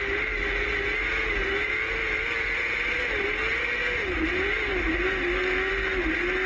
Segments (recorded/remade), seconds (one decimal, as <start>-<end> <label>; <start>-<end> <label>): 0.0-6.5 recorded